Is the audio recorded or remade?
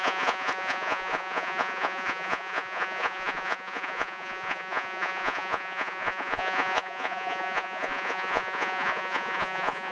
remade